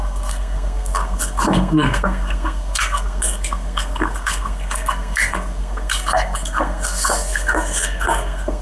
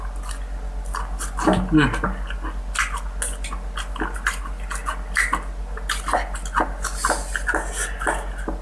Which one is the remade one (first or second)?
first